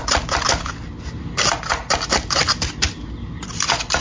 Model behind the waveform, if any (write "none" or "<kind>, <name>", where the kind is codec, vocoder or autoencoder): none